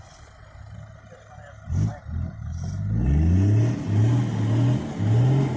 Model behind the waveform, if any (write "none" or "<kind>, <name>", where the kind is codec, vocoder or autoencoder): none